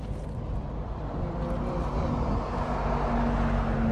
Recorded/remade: recorded